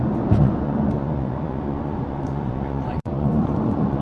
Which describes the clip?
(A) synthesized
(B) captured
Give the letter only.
A